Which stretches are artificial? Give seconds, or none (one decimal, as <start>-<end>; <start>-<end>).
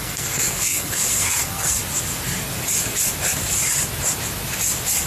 0.0-1.8